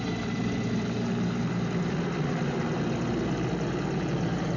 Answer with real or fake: real